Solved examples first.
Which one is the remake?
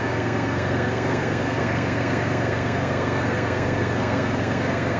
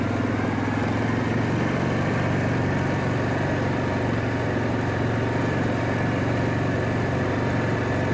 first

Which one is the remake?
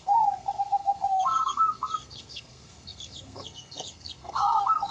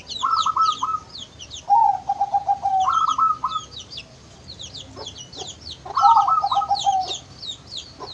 first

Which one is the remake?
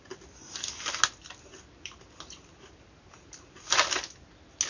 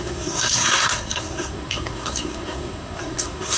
second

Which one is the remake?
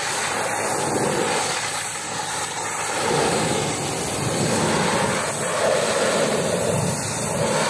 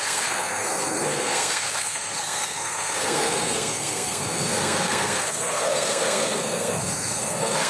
second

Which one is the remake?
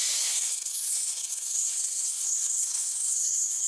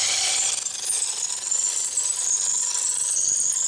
first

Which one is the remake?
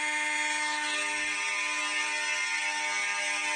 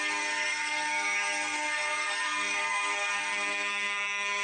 second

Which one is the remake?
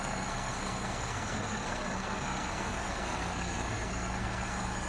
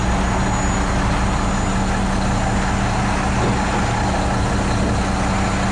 first